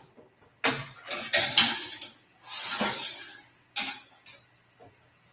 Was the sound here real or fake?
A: real